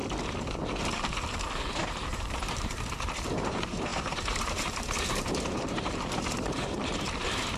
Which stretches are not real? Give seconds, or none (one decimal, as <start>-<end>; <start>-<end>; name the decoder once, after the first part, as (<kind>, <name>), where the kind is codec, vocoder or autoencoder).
1.7-7.6 (vocoder, BigVGAN v2)